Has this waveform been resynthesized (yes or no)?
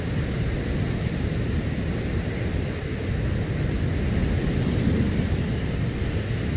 no